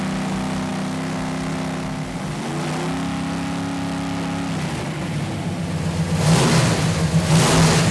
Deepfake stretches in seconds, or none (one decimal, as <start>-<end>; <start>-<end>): none